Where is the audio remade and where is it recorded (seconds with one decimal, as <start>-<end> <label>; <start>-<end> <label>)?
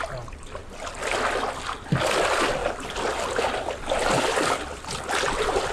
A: 0.0-0.6 recorded; 0.6-1.5 remade; 1.5-2.6 recorded; 2.6-5.7 remade